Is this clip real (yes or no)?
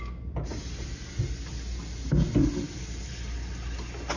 yes